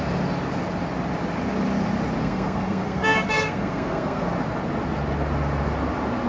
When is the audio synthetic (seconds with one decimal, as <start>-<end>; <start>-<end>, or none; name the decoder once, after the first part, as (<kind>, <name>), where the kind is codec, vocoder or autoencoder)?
2.2-4.2 (codec, SNAC)